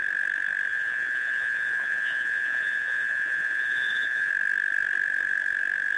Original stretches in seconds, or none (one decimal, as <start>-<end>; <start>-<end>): 0.0-0.7; 4.3-6.0